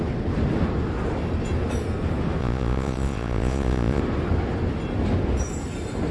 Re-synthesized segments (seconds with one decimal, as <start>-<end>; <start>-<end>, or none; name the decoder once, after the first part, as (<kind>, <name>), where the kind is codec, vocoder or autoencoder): 2.4-4.0 (vocoder, Vocos)

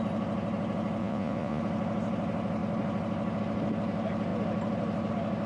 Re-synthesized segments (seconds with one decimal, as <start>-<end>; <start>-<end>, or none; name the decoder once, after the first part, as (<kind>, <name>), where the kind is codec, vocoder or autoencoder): 1.0-1.6 (vocoder, Vocos)

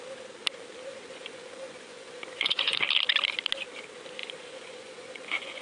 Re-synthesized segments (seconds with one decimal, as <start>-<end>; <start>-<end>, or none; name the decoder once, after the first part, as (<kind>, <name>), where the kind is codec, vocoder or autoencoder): 0.9-2.8 (vocoder, Vocos); 4.2-5.6

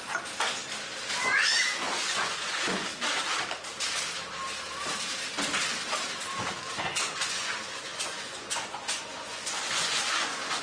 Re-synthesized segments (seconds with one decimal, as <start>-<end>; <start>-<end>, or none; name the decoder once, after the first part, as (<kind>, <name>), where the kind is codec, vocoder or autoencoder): 1.2-2.9 (vocoder, Vocos); 6.7-10.6

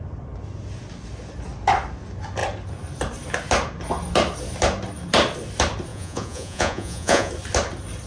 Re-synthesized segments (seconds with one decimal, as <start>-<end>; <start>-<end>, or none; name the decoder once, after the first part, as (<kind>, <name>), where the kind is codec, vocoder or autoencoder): 5.9-7.3 (vocoder, Vocos)

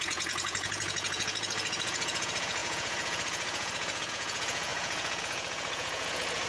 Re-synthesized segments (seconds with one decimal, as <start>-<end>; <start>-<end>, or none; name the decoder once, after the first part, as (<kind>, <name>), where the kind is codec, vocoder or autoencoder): 0.0-6.5 (vocoder, Vocos)

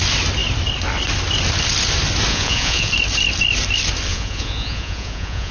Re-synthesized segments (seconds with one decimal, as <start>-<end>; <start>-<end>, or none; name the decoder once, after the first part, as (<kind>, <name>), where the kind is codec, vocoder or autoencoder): 2.3-2.9 (vocoder, Vocos); 4.1-5.5

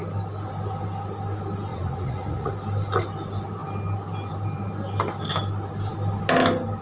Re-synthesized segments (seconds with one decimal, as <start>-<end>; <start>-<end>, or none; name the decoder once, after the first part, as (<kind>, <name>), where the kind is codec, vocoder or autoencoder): 1.7-2.5 (vocoder, Vocos)